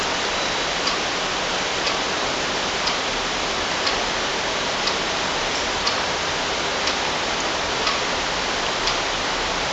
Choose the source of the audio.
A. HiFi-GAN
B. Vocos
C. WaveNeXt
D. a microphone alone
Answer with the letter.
D